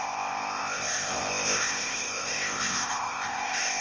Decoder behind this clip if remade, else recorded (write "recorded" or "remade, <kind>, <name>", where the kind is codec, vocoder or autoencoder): remade, codec, ZipCodec